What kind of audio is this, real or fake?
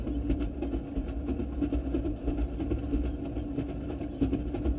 real